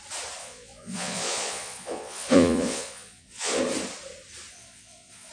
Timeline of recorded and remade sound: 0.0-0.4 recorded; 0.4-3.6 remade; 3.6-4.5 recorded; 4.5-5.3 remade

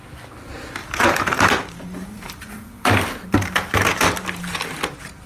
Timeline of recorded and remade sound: 0.0-0.8 recorded; 0.8-4.0 remade; 4.0-5.3 recorded

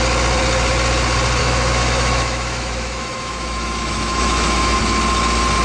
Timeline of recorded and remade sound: 0.0-1.4 recorded; 1.4-4.8 remade; 4.8-5.6 recorded

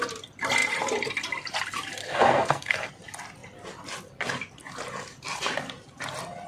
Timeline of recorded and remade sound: 0.0-2.0 recorded; 2.0-2.9 remade; 2.9-6.5 recorded